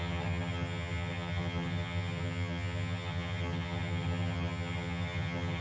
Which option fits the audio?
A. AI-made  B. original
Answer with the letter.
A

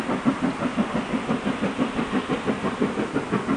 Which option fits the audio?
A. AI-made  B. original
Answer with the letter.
B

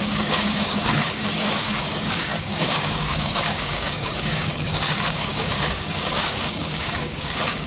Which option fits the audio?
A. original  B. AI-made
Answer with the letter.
B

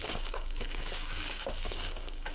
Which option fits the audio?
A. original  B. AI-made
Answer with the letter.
B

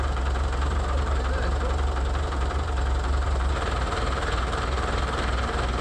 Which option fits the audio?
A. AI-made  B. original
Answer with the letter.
A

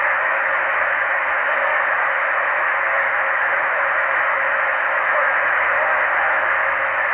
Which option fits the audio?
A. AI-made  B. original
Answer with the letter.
A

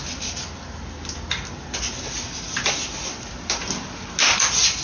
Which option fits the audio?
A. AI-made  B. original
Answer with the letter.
B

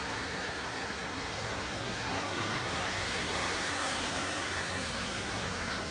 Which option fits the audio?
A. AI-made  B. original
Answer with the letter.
A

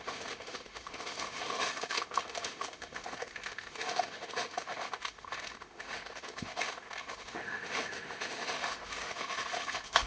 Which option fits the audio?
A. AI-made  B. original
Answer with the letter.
A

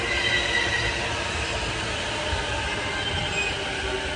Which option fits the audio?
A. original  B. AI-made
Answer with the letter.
A